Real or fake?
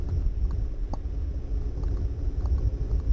real